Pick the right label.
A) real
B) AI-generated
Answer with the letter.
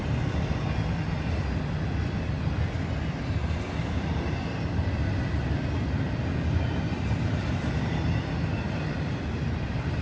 A